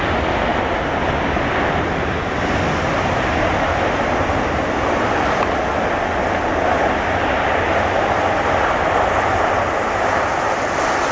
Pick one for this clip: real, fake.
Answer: real